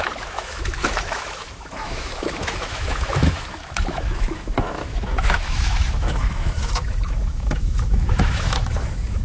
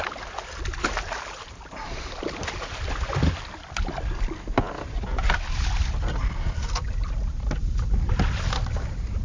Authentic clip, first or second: second